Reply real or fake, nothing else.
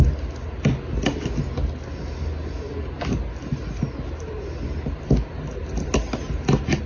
real